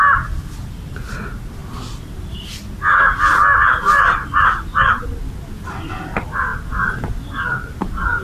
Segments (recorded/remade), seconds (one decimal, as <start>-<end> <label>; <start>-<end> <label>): 0.0-8.2 recorded

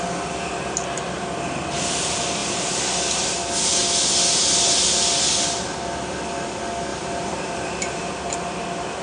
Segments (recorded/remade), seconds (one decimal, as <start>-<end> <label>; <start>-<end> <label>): 0.0-2.4 recorded; 2.4-2.9 remade; 2.9-6.9 recorded; 6.9-8.1 remade; 8.1-9.0 recorded